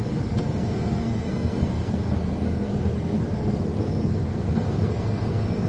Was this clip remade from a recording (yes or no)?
yes